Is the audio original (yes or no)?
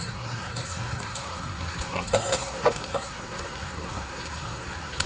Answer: no